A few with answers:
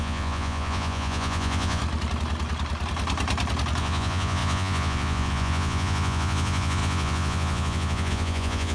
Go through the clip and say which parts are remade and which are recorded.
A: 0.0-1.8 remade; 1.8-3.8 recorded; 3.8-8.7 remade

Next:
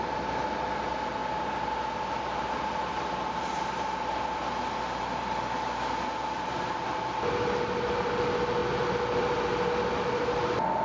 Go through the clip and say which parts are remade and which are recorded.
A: 0.0-10.8 recorded